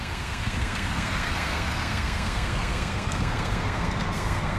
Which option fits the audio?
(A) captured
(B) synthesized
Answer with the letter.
B